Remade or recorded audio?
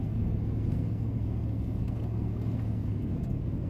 remade